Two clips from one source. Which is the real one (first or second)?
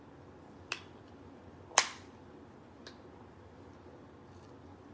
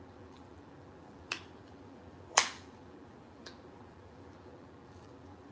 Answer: first